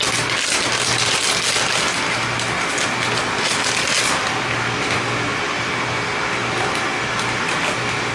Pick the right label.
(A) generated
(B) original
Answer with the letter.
B